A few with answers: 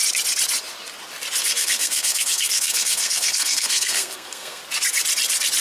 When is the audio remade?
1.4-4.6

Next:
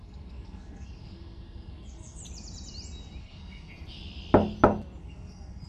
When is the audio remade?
0.0-2.2; 3.2-3.7; 5.0-5.7

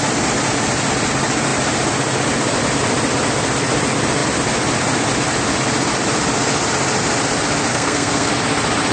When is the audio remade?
7.7-8.3

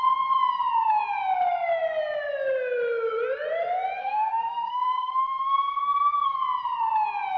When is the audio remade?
4.0-6.4

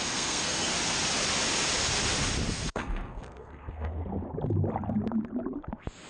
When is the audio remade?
0.0-0.7; 2.5-4.0

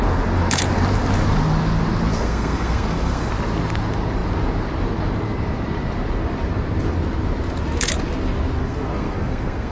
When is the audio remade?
2.1-3.3; 8.6-9.7

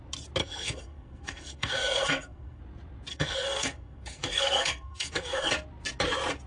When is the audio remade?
0.4-2.6; 3.1-5.5